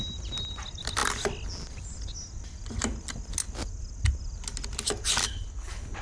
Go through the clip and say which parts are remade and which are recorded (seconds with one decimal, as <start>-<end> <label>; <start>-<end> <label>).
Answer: 0.0-5.2 recorded; 5.2-6.0 remade